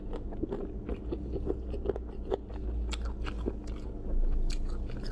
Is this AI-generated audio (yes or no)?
no